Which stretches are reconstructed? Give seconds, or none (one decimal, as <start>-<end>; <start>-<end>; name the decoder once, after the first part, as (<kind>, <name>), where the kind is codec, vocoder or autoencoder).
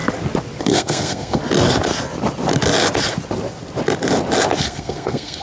0.6-1.4 (codec, SNAC); 4.6-5.4